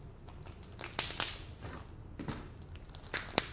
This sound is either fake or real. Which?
real